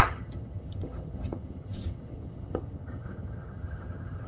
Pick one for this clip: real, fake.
fake